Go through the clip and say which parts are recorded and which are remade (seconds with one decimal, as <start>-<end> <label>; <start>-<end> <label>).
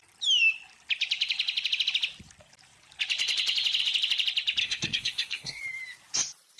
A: 0.0-4.6 recorded; 4.6-5.6 remade; 5.6-6.6 recorded